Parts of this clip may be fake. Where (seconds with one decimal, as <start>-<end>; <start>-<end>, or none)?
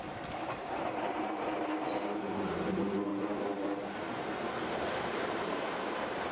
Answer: 0.0-3.1; 5.1-6.3